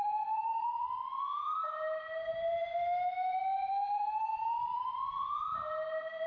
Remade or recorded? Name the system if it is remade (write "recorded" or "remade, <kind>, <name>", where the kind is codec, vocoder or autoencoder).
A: recorded